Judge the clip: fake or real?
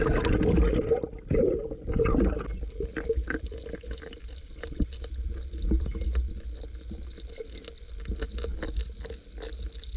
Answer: real